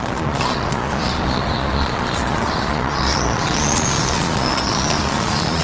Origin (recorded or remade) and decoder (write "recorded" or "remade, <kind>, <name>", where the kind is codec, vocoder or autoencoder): remade, vocoder, Vocos